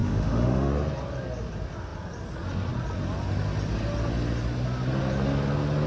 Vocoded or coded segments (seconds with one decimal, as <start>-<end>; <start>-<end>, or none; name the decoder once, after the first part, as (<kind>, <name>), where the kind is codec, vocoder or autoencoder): 0.0-0.7 (autoencoder, DAC-VAE)